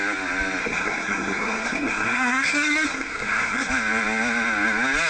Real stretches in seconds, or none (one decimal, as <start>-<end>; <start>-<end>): 0.0-0.6; 3.7-5.1